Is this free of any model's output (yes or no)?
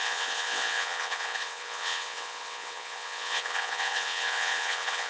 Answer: no